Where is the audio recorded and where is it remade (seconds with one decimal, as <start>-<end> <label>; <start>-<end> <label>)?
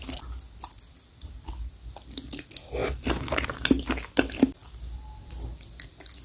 0.0-6.2 recorded